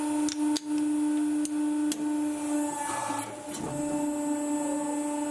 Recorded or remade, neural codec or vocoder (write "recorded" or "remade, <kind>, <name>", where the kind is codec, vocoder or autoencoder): recorded